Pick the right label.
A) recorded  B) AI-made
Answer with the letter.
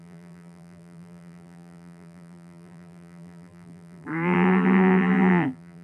B